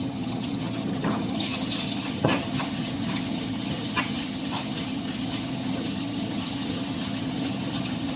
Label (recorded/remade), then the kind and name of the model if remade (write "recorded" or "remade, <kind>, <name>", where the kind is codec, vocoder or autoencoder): remade, vocoder, HiFi-GAN